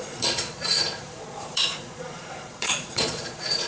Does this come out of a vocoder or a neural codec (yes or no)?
yes